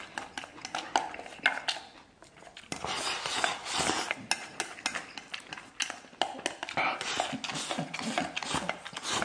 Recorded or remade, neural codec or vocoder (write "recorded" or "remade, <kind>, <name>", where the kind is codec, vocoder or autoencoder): recorded